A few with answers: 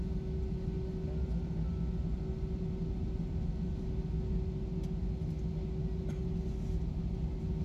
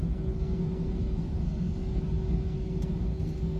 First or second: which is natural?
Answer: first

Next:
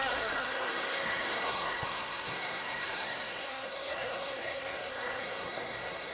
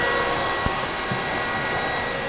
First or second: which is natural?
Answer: second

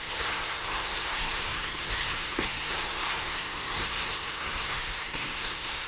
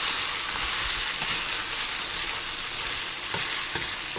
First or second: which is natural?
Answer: second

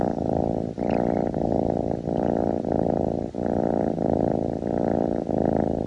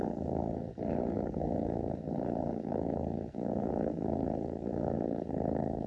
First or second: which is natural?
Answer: first